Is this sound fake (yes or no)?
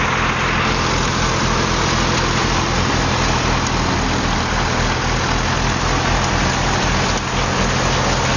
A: no